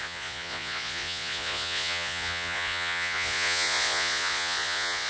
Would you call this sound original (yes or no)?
no